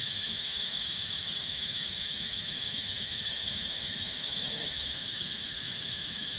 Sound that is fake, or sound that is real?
fake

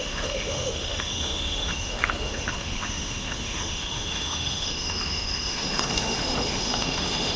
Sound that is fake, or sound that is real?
fake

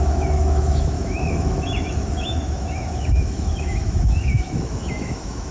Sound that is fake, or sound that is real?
fake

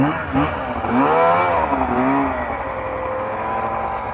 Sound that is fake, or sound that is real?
real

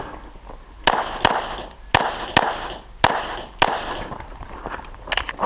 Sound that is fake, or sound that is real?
real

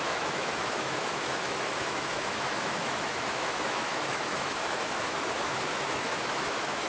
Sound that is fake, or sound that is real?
fake